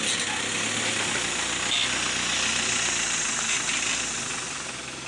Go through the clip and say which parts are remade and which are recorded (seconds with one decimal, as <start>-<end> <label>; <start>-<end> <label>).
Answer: 0.0-5.1 recorded